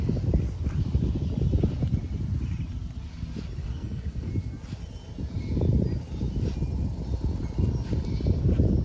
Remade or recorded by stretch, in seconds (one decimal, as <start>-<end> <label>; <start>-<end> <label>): 0.0-3.6 recorded; 3.6-4.3 remade; 4.3-8.8 recorded